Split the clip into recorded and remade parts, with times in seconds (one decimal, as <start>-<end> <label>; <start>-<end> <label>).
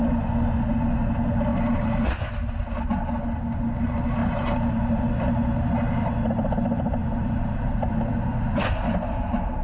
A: 0.0-1.5 recorded; 1.5-2.3 remade; 2.3-4.2 recorded; 4.2-5.0 remade; 5.0-7.0 recorded; 7.0-7.9 remade; 7.9-9.6 recorded